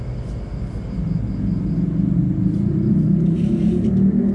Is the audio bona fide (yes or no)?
yes